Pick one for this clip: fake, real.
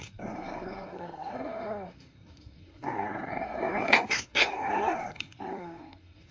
fake